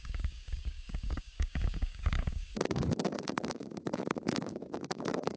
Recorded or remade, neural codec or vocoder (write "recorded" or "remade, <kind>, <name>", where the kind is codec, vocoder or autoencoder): remade, codec, DAC